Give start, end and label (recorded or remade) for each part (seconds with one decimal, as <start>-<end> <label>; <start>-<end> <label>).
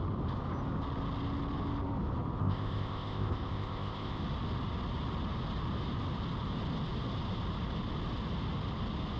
0.0-2.4 recorded; 2.4-4.2 remade; 4.2-9.2 recorded